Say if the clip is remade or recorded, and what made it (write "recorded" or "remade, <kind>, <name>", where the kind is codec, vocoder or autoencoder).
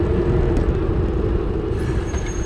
recorded